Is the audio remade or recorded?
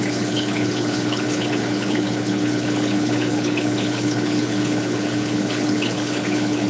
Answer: remade